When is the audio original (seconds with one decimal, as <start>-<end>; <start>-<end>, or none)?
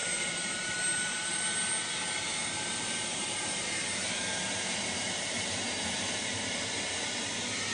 1.4-2.4; 7.0-7.7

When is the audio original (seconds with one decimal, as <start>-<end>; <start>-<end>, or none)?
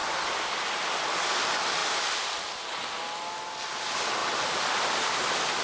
0.0-4.2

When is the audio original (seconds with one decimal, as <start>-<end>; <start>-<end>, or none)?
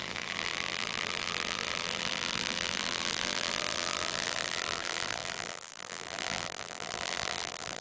none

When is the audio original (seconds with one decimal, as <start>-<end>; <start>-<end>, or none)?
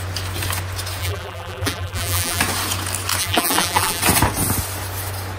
0.0-1.0; 2.4-3.2; 4.0-5.4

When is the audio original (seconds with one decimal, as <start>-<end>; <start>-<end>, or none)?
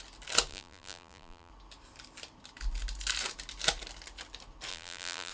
0.0-0.5; 1.5-4.7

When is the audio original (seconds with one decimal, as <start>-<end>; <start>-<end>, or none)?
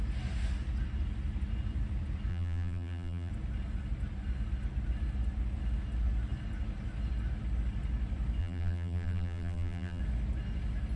0.0-2.3; 3.3-8.4; 10.0-11.0